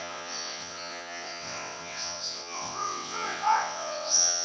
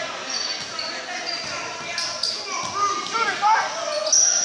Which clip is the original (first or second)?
second